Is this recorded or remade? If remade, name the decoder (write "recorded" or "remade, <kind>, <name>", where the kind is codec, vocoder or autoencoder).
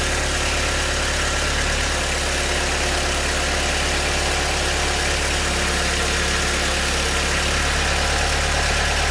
recorded